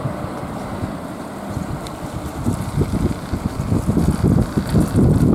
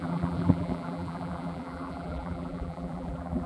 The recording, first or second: first